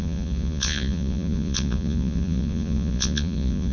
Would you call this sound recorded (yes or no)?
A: no